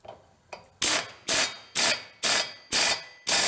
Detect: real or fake real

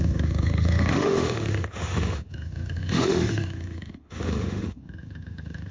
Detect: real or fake fake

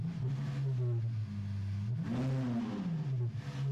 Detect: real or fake real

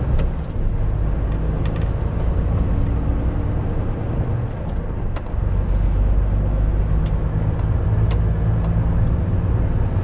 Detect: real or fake real